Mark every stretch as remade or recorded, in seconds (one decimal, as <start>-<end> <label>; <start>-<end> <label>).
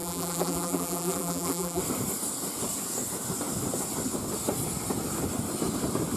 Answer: 0.0-1.8 remade; 1.8-6.2 recorded